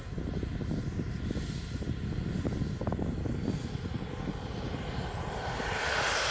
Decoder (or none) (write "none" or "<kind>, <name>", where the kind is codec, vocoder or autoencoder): none